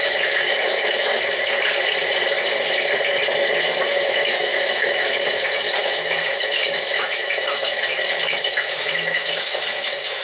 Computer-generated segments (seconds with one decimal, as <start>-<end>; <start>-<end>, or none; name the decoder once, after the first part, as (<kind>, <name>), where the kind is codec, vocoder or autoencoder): 0.0-1.1 (autoencoder, DAC-VAE); 3.8-10.2